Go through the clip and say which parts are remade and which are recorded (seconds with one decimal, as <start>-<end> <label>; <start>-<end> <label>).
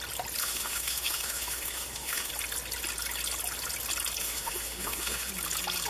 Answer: 0.0-0.4 recorded; 0.4-2.3 remade; 2.3-4.2 recorded; 4.2-5.3 remade; 5.3-5.9 recorded